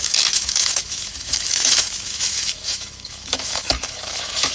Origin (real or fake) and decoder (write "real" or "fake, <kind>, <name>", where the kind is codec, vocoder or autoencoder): fake, autoencoder, DAC-VAE